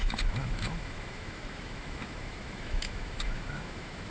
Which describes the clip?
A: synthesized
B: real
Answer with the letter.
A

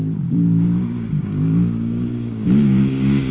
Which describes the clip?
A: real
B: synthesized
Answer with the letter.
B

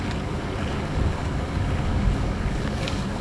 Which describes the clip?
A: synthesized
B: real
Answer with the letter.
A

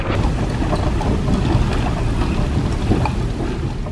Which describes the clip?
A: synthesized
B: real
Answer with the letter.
B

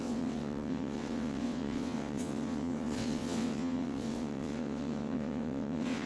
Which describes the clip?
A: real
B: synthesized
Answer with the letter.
B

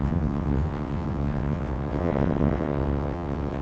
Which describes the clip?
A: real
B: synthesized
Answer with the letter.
B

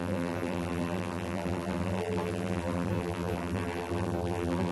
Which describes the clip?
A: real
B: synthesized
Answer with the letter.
B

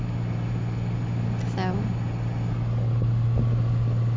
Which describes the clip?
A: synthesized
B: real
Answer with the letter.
B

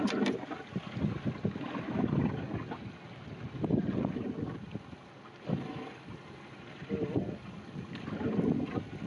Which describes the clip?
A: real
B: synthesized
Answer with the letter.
A